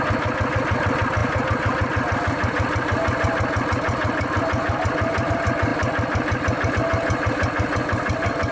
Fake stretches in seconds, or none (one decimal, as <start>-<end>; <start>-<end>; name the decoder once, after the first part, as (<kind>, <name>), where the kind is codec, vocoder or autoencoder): none